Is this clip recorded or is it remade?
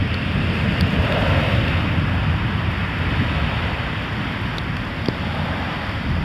recorded